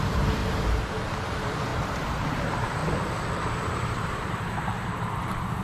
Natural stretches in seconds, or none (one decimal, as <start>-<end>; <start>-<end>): 0.4-1.1; 2.8-3.5